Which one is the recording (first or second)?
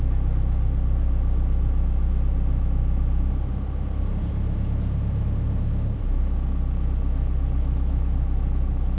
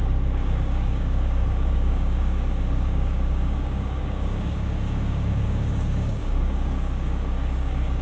first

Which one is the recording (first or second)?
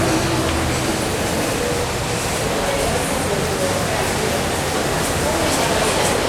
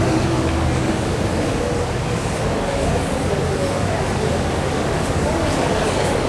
first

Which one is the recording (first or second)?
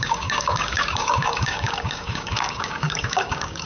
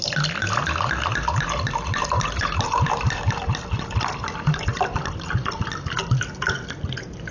second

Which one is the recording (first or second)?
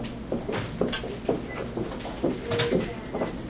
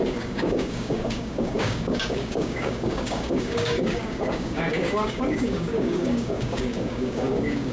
first